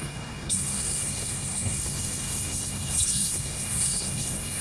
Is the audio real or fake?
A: fake